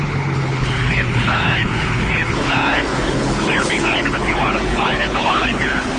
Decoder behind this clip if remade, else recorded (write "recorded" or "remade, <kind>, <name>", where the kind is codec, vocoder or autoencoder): remade, codec, HILCodec